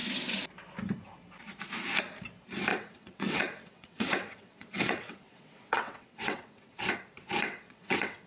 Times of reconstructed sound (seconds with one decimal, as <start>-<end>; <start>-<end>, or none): 2.7-6.9; 7.4-8.3